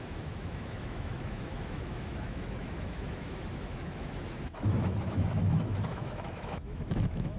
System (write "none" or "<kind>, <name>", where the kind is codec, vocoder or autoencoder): autoencoder, DAC-VAE